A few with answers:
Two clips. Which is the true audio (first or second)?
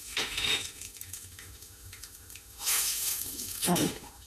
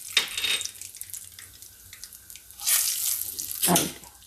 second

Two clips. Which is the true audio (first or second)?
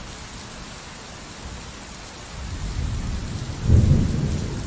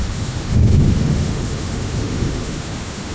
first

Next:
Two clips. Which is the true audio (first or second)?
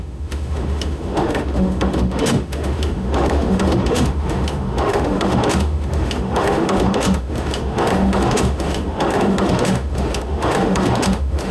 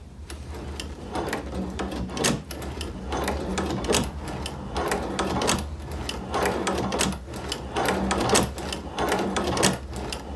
second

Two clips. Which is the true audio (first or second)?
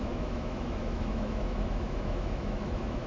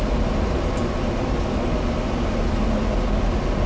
second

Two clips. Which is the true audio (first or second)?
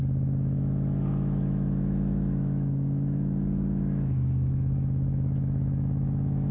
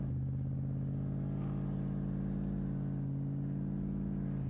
second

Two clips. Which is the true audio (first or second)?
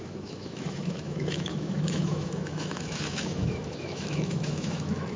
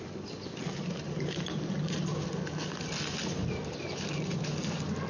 second